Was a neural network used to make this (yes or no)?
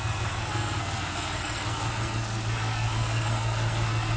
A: yes